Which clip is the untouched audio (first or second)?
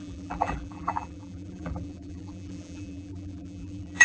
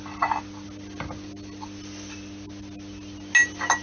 second